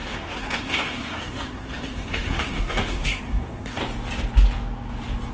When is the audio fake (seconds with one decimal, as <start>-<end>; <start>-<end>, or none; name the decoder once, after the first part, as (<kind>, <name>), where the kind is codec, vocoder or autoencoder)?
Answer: 0.0-3.8 (codec, SNAC)